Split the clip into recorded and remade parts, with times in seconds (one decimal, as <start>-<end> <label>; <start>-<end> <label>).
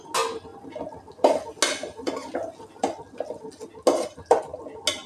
0.0-5.1 recorded